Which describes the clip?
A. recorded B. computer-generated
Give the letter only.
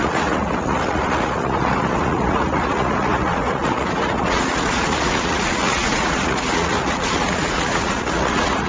B